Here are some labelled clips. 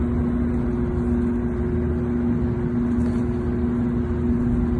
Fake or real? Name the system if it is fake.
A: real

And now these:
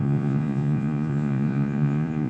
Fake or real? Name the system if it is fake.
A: fake, vocoder, Vocos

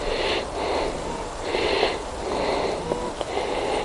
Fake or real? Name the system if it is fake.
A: real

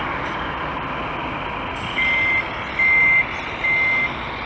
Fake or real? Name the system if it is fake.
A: real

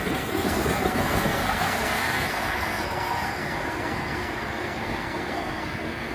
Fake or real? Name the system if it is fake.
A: fake, codec, SNAC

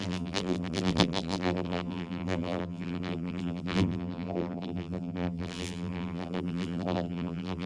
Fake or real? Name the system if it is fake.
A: fake, vocoder, BigVGAN v2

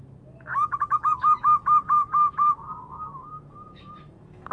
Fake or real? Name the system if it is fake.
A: fake, autoencoder, DAC-VAE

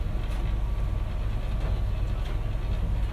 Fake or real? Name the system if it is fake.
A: real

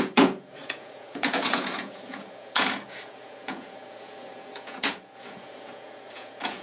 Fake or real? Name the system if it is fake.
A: fake, vocoder, Vocos